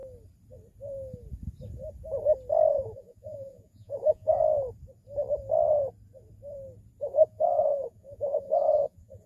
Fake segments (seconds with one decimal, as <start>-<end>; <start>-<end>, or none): 2.7-4.4; 7.0-9.3

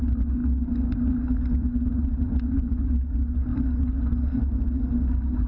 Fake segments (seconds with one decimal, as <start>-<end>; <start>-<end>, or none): none

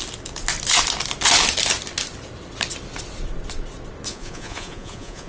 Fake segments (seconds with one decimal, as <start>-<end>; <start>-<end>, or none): 4.1-5.3

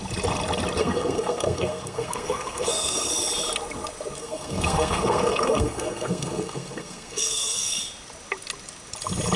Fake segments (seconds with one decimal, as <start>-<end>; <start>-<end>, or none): 0.8-3.1; 4.2-7.8

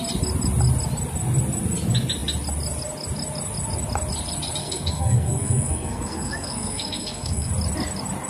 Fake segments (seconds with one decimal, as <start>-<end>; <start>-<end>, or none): 4.6-7.5

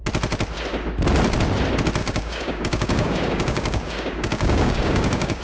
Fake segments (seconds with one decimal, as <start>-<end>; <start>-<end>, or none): 2.0-5.4